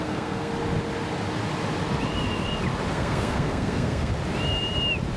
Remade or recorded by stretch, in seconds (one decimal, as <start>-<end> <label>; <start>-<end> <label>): 0.0-0.5 remade; 0.5-2.9 recorded; 2.9-4.1 remade; 4.1-5.2 recorded